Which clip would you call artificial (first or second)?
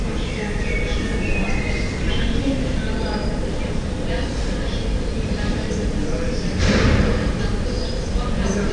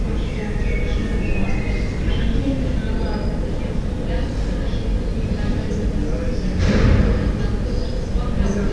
first